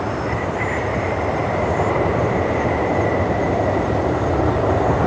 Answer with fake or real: fake